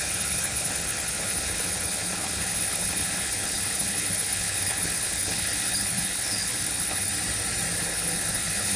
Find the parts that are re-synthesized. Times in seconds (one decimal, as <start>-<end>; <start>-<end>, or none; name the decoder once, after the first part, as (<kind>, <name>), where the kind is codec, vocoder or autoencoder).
0.0-7.1 (codec, HILCodec); 7.8-8.8